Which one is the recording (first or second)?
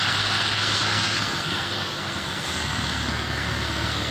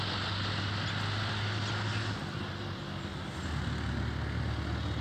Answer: second